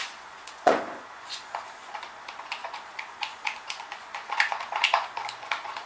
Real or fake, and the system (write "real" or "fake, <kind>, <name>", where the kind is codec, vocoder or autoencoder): fake, vocoder, Vocos